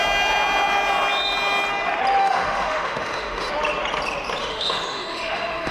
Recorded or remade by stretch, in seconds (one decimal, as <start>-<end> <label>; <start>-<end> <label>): 0.0-2.2 recorded; 2.2-3.5 remade; 3.5-4.4 recorded; 4.4-5.7 remade